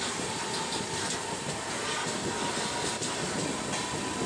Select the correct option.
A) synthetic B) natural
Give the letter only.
B